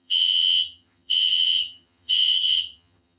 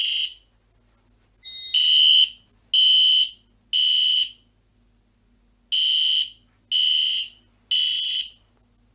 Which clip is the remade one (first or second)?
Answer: first